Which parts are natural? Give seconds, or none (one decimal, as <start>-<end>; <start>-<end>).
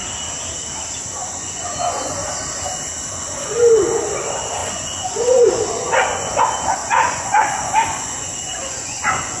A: 0.0-1.0; 2.2-3.1